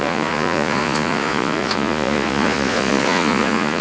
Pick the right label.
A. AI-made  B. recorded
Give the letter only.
A